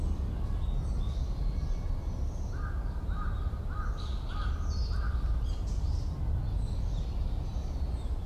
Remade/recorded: recorded